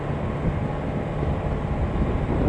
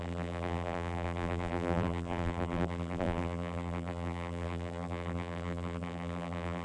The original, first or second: first